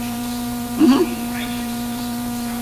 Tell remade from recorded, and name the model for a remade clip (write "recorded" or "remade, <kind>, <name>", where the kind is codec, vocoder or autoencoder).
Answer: remade, vocoder, BigVGAN v2